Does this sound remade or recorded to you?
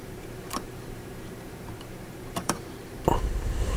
remade